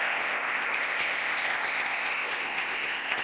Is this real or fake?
fake